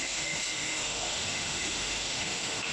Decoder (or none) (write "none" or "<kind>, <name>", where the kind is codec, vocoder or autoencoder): autoencoder, DAC-VAE